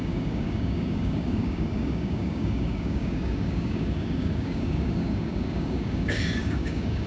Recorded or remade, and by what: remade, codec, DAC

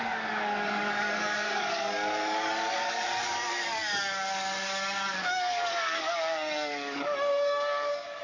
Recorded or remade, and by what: remade, codec, DAC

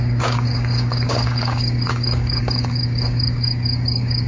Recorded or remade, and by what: remade, codec, DAC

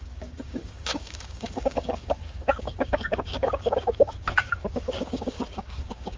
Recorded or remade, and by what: remade, codec, DAC